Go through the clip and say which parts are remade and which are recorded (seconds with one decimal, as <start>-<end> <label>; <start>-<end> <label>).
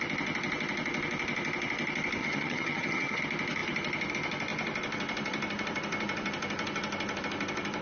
0.0-2.2 recorded; 2.2-3.2 remade; 3.2-7.8 recorded